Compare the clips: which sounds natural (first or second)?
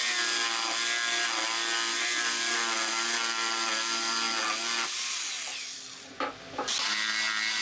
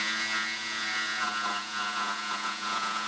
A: first